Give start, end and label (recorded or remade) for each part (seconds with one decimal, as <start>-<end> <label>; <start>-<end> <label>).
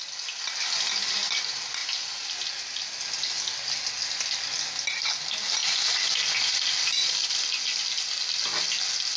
0.0-9.2 recorded